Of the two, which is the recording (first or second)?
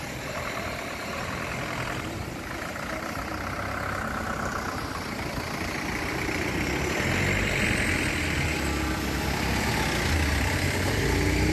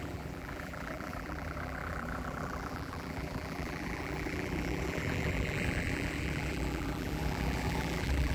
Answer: first